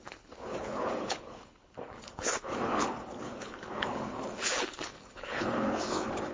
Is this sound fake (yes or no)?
yes